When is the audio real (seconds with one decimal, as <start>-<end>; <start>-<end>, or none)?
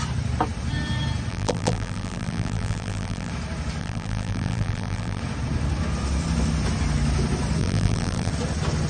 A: 0.0-1.3; 3.3-3.8; 5.2-7.6; 8.3-8.9